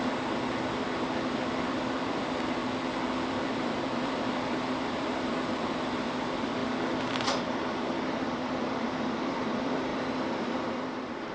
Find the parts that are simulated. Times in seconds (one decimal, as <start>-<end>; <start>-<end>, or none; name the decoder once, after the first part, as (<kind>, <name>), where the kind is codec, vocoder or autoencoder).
0.0-2.6 (vocoder, BigVGAN v2); 3.3-11.3